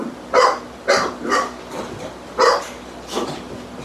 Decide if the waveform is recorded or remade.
recorded